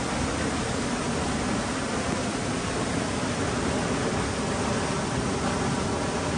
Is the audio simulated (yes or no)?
no